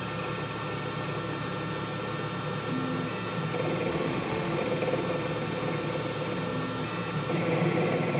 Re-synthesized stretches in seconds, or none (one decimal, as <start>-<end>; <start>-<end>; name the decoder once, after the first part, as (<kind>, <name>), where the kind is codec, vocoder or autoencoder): 3.9-4.6 (autoencoder, DAC-VAE)